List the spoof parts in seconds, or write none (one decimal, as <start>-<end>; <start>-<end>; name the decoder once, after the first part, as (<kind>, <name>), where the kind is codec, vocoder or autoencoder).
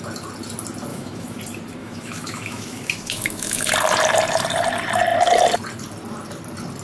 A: 0.9-1.4 (autoencoder, DAC-VAE); 1.8-3.7